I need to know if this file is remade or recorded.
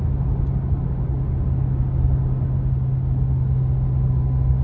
recorded